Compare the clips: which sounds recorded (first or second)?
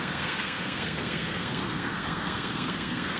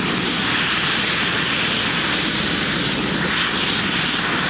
second